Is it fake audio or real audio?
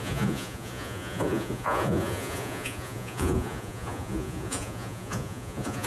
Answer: fake